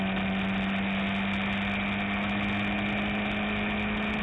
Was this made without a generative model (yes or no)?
yes